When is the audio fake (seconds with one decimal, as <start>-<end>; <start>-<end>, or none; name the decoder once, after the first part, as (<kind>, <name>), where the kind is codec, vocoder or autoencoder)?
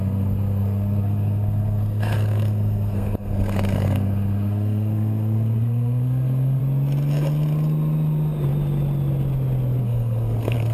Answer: 0.0-6.6 (codec, SNAC); 9.8-10.7